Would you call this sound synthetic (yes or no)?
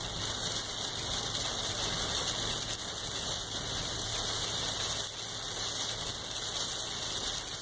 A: no